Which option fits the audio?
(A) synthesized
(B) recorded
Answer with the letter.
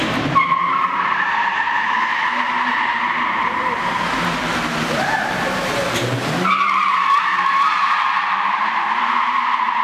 A